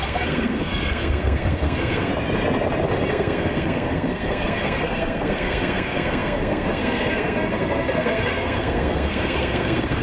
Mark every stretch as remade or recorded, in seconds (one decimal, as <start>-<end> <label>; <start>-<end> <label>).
0.0-2.1 remade; 2.1-3.1 recorded; 3.1-10.0 remade